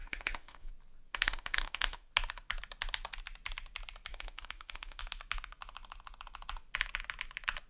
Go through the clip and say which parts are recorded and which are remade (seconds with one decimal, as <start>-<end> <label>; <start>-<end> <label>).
0.0-0.7 remade; 0.7-1.1 recorded; 1.1-2.1 remade; 2.1-4.1 recorded; 4.1-5.0 remade; 5.0-7.7 recorded